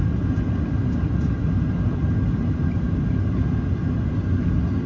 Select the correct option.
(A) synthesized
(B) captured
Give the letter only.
B